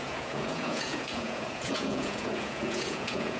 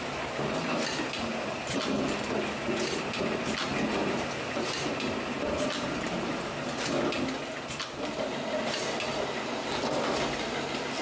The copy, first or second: first